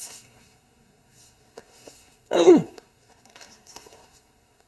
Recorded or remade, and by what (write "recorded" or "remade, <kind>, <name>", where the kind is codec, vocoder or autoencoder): remade, codec, SNAC